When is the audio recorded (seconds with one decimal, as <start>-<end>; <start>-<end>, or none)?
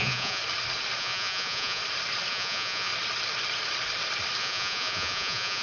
0.4-1.0; 1.8-2.3; 2.9-4.4